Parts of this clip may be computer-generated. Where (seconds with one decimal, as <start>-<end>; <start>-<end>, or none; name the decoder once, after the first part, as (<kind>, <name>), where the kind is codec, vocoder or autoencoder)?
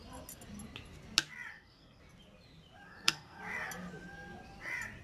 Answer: 1.5-2.0 (codec, SNAC); 2.9-3.4